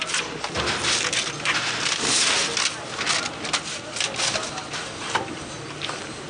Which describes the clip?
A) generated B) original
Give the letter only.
B